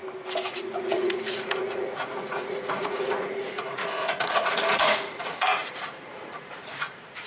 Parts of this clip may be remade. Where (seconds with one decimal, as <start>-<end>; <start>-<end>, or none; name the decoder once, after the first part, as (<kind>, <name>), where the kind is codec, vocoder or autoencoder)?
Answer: 0.5-7.3 (vocoder, Vocos)